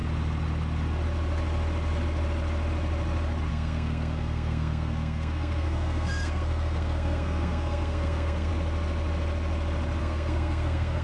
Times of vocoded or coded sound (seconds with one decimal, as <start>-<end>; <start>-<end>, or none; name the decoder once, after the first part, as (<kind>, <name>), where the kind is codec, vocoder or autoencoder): 3.5-8.5 (codec, SNAC); 10.0-11.0